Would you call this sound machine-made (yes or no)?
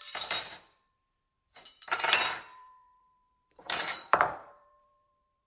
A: yes